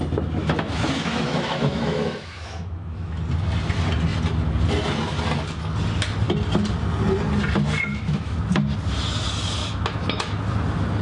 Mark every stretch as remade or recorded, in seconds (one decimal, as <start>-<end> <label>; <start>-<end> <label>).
0.0-0.4 recorded; 0.4-3.2 remade; 3.2-7.9 recorded; 7.9-8.4 remade; 8.4-9.6 recorded; 9.6-10.4 remade; 10.4-11.0 recorded